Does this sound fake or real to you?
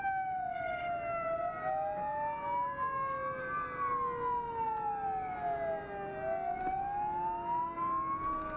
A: real